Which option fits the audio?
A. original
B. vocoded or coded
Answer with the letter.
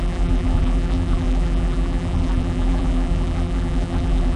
B